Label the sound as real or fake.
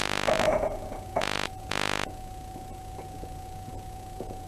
fake